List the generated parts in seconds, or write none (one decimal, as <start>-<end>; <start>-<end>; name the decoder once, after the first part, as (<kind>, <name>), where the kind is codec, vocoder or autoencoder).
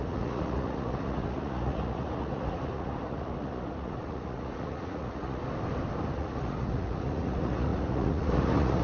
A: 0.0-5.4 (vocoder, Vocos); 6.1-8.8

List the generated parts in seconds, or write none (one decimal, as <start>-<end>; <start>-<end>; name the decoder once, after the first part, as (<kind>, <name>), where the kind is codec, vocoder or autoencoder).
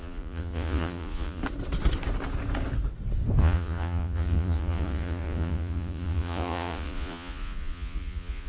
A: 0.0-1.4 (vocoder, Vocos); 3.4-8.5